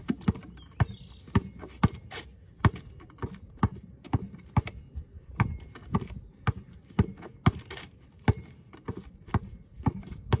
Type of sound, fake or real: real